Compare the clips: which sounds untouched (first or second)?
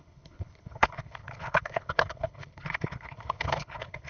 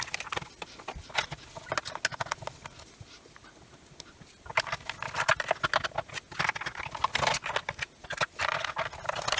second